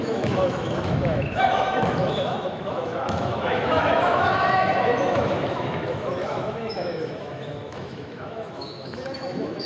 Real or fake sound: fake